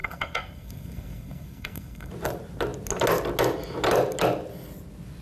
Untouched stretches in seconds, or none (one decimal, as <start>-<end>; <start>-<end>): 2.1-5.2